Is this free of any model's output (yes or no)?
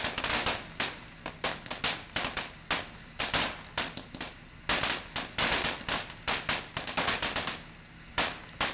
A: yes